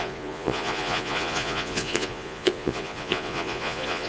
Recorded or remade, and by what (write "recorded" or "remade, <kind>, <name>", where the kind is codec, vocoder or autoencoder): remade, vocoder, Vocos